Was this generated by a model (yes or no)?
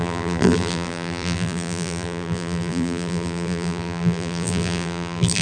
yes